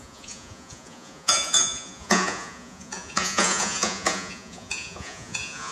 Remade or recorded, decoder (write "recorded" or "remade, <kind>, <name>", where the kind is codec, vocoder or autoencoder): remade, vocoder, Vocos